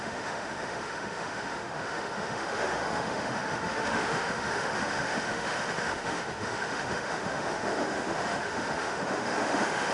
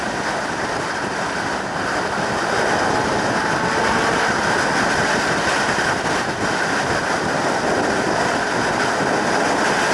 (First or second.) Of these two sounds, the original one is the second